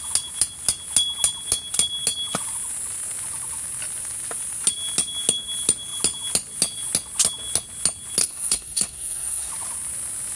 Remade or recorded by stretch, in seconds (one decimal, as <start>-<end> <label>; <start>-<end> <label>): 0.0-8.2 recorded; 8.2-9.5 remade; 9.5-10.4 recorded